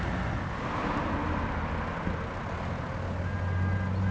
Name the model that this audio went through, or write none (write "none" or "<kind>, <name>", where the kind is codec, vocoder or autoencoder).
none